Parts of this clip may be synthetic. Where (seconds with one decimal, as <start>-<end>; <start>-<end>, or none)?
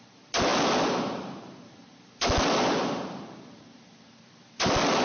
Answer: 0.0-5.0